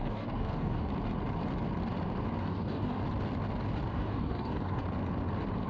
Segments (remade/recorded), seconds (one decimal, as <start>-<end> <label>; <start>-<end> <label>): 0.0-0.9 remade; 0.9-2.4 recorded; 2.4-3.0 remade; 3.0-3.9 recorded; 3.9-4.8 remade; 4.8-5.7 recorded